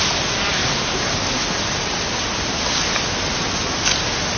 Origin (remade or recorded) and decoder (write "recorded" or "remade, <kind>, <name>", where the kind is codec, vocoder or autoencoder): recorded